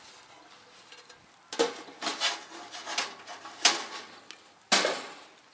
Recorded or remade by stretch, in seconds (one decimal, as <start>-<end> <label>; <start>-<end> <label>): 0.0-5.5 recorded

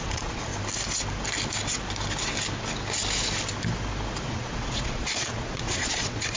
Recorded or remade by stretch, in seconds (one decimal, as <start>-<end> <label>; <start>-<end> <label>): 0.0-0.5 remade; 0.5-4.3 recorded; 4.3-6.4 remade